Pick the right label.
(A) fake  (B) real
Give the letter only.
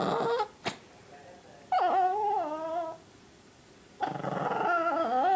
B